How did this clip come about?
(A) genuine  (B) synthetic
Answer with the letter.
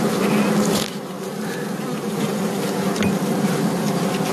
A